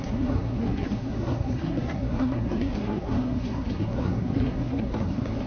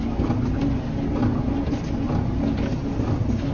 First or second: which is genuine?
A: second